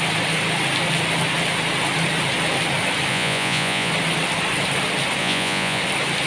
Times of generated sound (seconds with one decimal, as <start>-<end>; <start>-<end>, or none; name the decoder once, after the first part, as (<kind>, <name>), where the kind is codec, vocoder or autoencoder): 3.1-3.9 (vocoder, Vocos); 5.2-5.8